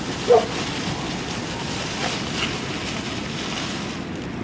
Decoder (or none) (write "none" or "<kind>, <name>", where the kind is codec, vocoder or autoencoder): none